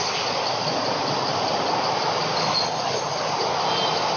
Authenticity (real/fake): real